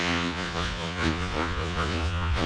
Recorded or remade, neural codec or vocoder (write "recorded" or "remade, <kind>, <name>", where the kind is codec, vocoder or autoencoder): remade, vocoder, Vocos